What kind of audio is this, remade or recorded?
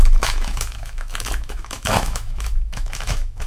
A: remade